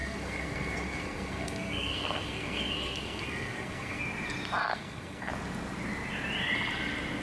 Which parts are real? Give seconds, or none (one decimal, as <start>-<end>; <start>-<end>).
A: 4.0-4.7; 5.3-7.2